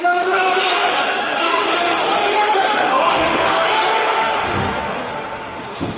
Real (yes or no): no